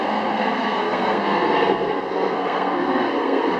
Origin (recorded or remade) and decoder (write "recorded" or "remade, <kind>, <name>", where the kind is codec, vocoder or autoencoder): remade, codec, SNAC